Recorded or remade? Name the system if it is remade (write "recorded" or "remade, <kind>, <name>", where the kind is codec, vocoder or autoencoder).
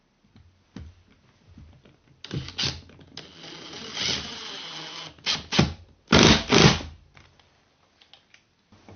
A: recorded